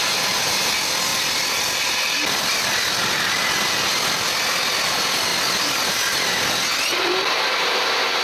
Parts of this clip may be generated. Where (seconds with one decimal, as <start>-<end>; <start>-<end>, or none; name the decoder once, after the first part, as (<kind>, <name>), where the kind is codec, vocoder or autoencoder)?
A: 1.1-3.4 (vocoder, BigVGAN v2)